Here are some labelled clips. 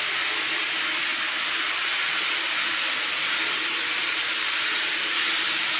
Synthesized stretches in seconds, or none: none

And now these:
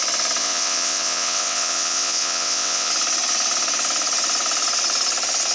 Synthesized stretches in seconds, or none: 0.4-2.9 (vocoder, WaveNeXt)